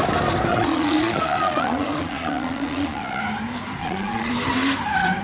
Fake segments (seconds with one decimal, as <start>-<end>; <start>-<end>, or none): 0.5-3.2; 3.8-4.3